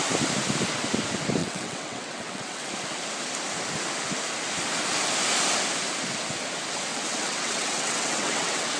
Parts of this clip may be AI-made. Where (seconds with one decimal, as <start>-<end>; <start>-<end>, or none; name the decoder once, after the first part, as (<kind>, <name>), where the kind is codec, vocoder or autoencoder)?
1.4-2.7 (vocoder, WaveNeXt); 6.9-8.8